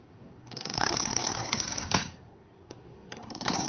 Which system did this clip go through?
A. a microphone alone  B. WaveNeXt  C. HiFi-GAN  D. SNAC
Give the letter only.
D